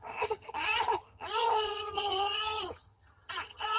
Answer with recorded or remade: remade